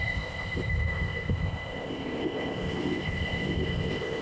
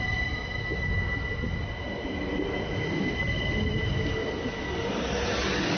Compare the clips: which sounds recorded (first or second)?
second